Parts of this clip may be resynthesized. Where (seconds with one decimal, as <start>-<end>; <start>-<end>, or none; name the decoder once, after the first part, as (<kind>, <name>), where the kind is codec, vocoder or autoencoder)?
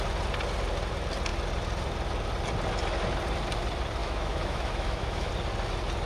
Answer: 4.0-5.3 (autoencoder, DAC-VAE)